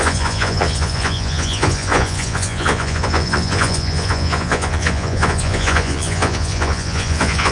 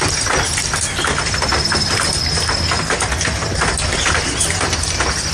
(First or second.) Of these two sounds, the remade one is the first